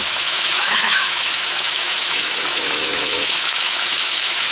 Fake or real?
fake